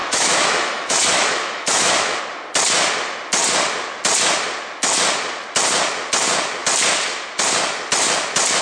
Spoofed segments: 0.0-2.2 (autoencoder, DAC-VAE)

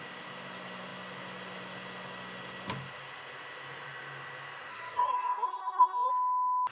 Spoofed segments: 4.7-6.1 (codec, SNAC)

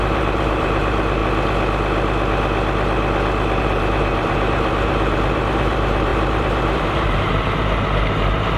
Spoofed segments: 0.0-1.2 (vocoder, BigVGAN v2); 3.6-8.6